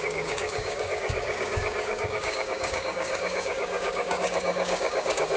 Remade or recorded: remade